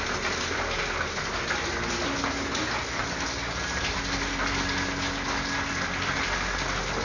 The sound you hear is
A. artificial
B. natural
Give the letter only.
B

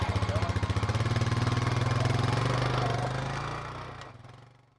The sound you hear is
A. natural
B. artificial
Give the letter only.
A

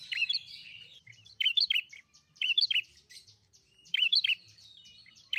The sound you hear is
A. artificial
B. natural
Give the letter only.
A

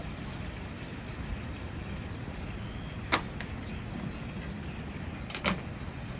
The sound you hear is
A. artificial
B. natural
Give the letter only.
B